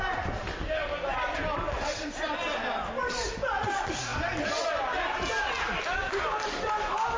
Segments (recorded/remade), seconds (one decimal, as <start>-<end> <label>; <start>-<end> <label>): 0.0-7.2 recorded